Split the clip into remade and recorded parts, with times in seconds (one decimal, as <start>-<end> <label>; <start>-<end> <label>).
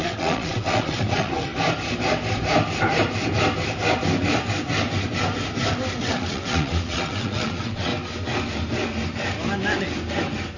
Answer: 0.0-1.5 remade; 1.5-6.0 recorded; 6.0-7.9 remade; 7.9-10.6 recorded